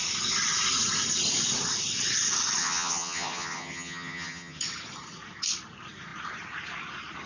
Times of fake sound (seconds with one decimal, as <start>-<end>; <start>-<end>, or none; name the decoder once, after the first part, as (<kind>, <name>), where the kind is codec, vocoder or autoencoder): 2.6-4.6 (vocoder, HiFi-GAN)